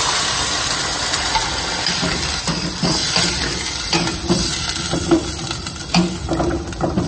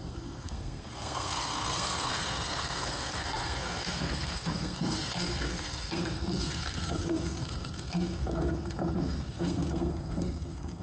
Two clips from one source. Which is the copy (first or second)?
second